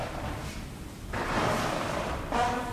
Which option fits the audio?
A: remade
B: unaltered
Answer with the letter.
A